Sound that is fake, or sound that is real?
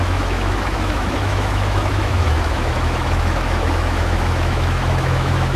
fake